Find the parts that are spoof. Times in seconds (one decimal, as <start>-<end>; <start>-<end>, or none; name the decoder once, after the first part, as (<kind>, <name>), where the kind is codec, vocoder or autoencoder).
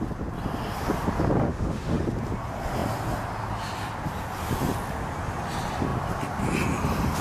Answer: 1.4-2.0 (autoencoder, DAC-VAE)